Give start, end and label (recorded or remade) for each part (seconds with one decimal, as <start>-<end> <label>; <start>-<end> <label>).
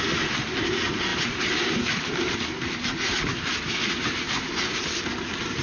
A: 0.0-1.1 recorded; 1.1-4.5 remade; 4.5-5.6 recorded